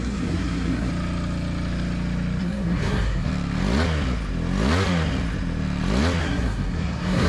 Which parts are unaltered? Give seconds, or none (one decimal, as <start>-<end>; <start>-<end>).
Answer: 0.9-2.4; 3.3-6.2